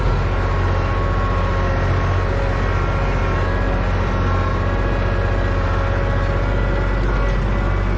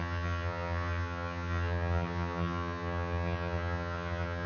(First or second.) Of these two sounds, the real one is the first